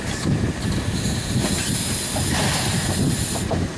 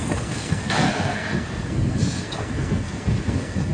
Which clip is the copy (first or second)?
second